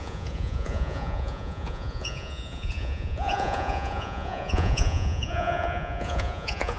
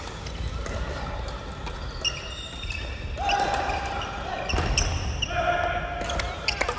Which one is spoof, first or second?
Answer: first